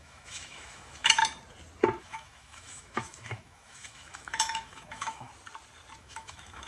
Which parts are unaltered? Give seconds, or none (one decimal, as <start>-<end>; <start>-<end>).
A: 1.2-2.0; 5.3-6.0